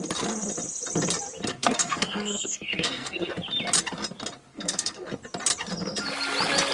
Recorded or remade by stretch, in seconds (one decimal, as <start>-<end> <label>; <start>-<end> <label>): 0.0-1.5 recorded; 1.5-3.3 remade; 3.3-4.5 recorded; 4.5-5.1 remade; 5.1-6.7 recorded